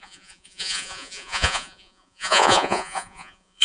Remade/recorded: remade